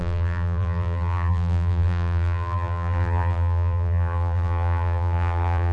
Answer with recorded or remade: remade